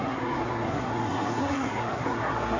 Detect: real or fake fake